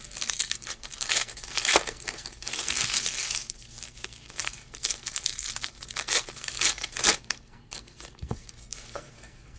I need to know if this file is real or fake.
fake